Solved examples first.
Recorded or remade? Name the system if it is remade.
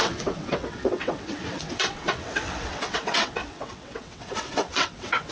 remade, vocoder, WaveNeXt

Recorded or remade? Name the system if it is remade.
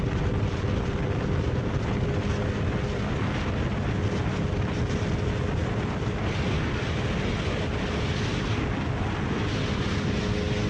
recorded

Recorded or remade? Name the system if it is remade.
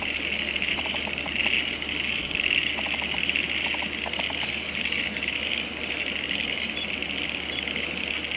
recorded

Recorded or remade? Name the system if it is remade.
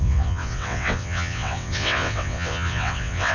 remade, vocoder, WaveNeXt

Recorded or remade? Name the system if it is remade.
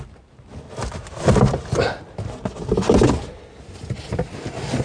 recorded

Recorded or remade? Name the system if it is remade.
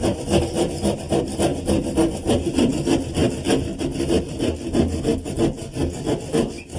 recorded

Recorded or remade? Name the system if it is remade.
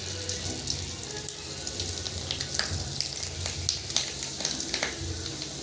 recorded